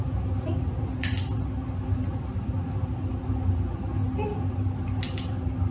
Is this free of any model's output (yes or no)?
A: yes